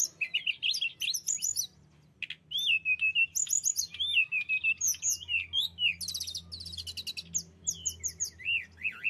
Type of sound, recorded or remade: recorded